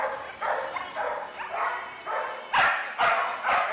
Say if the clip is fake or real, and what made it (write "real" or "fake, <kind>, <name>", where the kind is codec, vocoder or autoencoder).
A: real